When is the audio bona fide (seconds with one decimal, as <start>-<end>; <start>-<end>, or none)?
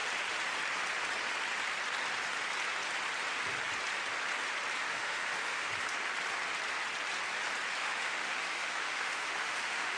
0.0-4.8; 5.7-7.8